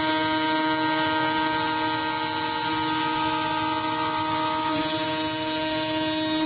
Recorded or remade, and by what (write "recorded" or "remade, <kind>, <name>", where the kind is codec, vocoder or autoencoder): recorded